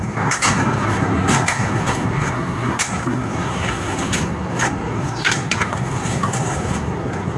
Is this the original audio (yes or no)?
no